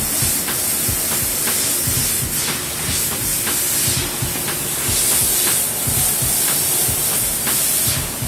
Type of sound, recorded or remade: recorded